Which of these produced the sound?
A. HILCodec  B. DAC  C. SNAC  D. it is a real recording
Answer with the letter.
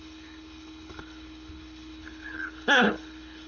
A